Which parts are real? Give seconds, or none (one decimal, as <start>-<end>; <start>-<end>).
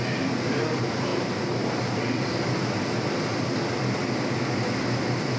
0.0-1.1; 1.7-5.4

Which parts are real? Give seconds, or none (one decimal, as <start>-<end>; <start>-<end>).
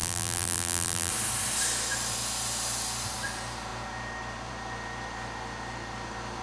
1.1-6.4